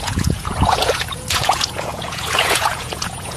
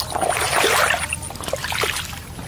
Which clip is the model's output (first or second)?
first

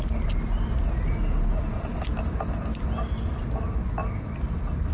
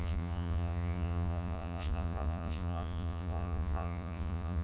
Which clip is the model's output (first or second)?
second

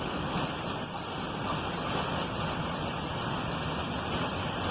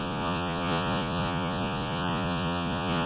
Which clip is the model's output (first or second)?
second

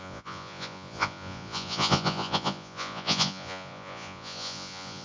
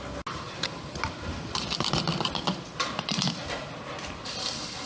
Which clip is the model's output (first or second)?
first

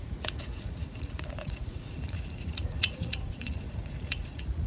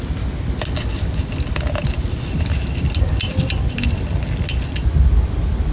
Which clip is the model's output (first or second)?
first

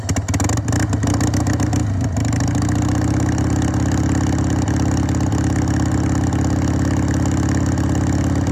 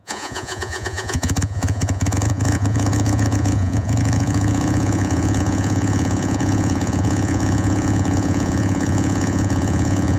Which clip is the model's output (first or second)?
second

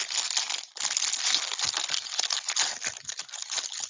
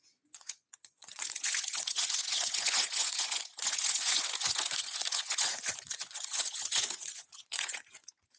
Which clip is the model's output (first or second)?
second